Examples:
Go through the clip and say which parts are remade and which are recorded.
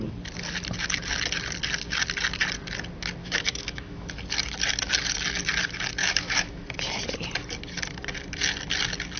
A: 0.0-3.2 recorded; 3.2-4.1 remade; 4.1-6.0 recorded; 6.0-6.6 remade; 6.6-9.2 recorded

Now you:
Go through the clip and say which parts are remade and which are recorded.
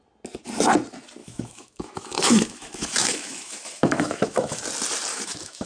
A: 0.0-1.2 recorded; 1.2-4.6 remade; 4.6-5.1 recorded; 5.1-5.7 remade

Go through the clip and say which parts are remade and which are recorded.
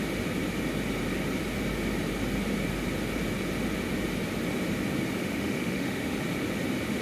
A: 0.0-5.2 recorded; 5.2-6.2 remade; 6.2-7.0 recorded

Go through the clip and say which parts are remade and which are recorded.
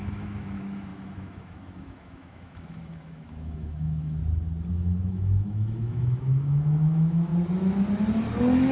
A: 0.0-4.2 remade; 4.2-4.7 recorded; 4.7-7.3 remade; 7.3-8.7 recorded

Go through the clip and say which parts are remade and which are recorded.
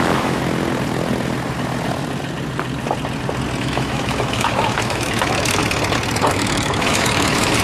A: 0.0-0.4 remade; 0.4-3.6 recorded; 3.6-5.6 remade; 5.6-6.3 recorded; 6.3-7.6 remade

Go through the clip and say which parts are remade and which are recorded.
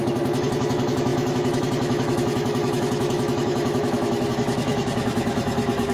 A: 0.0-5.9 remade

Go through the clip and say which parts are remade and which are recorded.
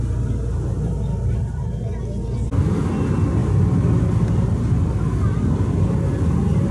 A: 0.0-6.7 recorded